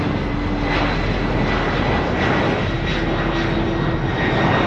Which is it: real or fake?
real